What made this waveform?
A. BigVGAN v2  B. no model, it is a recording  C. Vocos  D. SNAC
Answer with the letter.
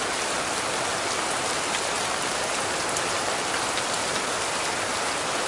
B